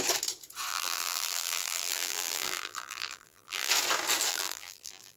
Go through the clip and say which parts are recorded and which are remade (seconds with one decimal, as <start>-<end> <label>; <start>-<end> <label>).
0.0-0.7 recorded; 0.7-3.7 remade; 3.7-4.3 recorded; 4.3-5.2 remade